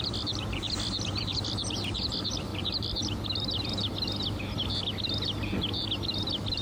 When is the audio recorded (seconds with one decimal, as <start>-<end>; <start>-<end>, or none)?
none